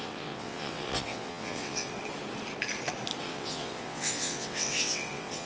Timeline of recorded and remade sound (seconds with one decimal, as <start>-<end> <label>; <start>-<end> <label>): 0.0-1.9 remade; 1.9-3.2 recorded; 3.2-5.5 remade